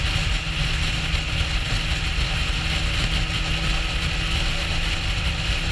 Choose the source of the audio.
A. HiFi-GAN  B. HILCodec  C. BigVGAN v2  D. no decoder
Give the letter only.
D